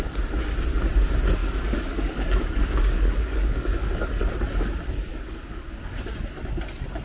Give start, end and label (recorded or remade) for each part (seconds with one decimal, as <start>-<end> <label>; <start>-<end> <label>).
0.0-1.4 recorded; 1.4-4.0 remade; 4.0-5.1 recorded; 5.1-5.9 remade; 5.9-7.0 recorded